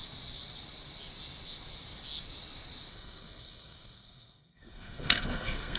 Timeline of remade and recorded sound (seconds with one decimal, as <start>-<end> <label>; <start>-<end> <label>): 0.0-2.9 recorded; 2.9-5.8 remade